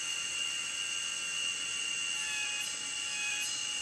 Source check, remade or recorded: remade